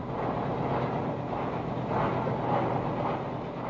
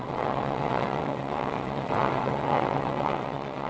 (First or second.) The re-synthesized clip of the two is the second